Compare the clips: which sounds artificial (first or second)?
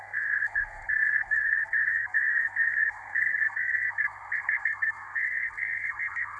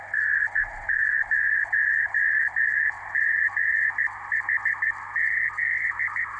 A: first